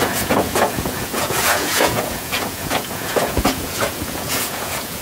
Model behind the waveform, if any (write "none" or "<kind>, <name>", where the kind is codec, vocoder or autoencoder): vocoder, Vocos